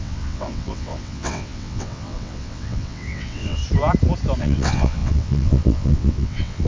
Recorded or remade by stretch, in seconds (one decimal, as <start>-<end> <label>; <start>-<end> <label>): 0.0-3.6 remade; 3.6-4.4 recorded; 4.4-6.7 remade